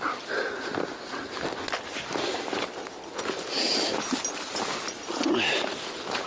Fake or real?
real